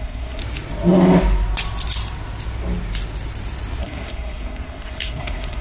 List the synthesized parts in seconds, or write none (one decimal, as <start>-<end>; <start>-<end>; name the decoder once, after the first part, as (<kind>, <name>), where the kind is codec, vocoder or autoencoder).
0.0-0.4 (codec, SNAC); 3.8-5.6